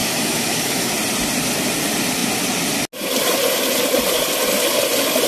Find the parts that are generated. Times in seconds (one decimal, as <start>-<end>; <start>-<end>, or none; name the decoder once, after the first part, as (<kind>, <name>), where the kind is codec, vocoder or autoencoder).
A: 0.0-0.9 (autoencoder, DAC-VAE)